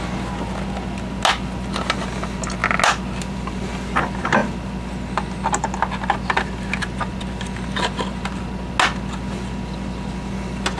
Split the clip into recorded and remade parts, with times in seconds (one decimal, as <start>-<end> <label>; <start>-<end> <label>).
0.0-10.8 recorded